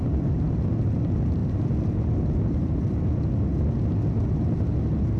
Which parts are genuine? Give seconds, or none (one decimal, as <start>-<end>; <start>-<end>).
0.0-5.2